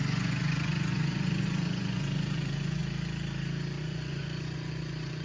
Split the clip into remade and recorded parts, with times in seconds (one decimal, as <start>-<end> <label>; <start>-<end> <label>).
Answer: 0.0-2.8 remade; 2.8-3.8 recorded; 3.8-5.2 remade